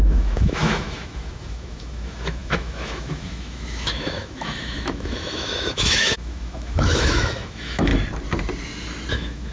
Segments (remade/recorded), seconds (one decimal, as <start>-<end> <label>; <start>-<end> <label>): 0.0-7.9 remade; 7.9-9.1 recorded; 9.1-9.5 remade